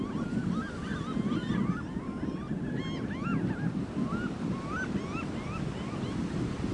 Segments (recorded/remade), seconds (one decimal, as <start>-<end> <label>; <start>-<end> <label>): 0.0-6.7 recorded